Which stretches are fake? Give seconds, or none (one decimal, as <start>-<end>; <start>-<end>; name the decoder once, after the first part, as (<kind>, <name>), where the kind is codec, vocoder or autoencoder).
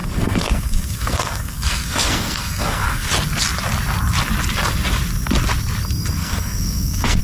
0.0-3.1 (codec, SNAC); 6.2-7.2